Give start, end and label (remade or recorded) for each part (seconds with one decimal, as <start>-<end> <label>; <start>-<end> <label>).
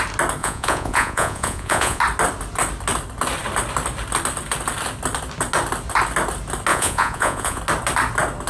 0.0-0.4 recorded; 0.4-2.0 remade; 2.0-6.7 recorded; 6.7-7.6 remade; 7.6-8.5 recorded